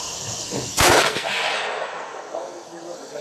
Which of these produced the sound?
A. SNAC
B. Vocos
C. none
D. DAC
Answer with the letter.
A